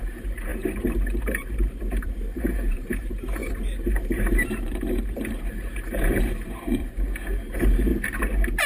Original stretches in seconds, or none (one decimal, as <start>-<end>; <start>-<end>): 7.9-8.7